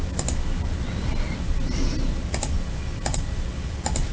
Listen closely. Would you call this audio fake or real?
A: real